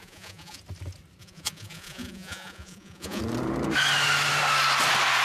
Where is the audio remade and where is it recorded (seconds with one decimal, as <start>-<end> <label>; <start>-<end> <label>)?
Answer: 0.0-0.6 remade; 0.6-1.2 recorded; 1.2-3.2 remade; 3.2-5.2 recorded